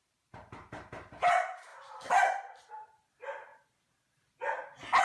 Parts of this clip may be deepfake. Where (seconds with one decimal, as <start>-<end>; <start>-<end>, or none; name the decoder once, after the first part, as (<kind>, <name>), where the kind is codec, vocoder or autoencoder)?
0.0-1.7 (vocoder, BigVGAN v2); 2.7-3.5